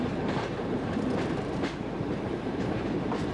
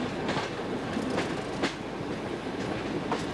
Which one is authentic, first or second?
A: second